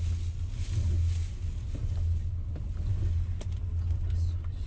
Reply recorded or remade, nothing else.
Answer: recorded